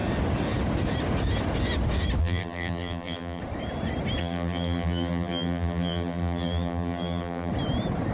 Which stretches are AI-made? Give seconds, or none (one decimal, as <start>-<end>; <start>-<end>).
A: 2.2-3.4; 4.2-7.5